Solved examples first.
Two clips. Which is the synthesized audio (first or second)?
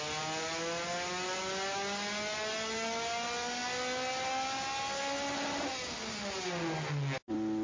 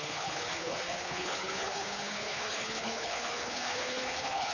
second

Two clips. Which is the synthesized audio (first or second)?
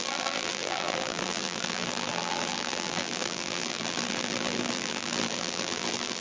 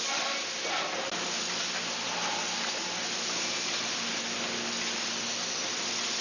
first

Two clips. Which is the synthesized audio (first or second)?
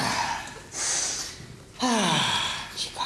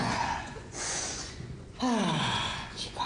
second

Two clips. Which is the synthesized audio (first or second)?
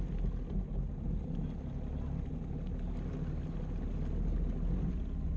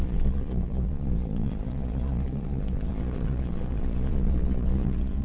second